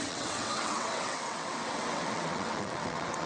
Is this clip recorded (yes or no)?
no